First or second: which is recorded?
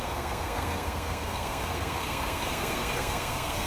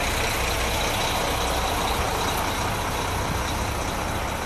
second